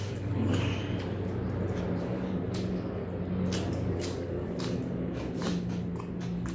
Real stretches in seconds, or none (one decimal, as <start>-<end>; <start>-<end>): 0.8-2.0; 3.0-3.7; 5.4-6.1